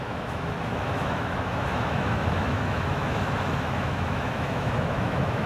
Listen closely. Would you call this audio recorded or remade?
remade